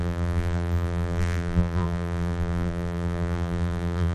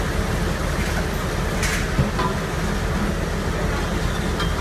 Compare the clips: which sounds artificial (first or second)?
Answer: first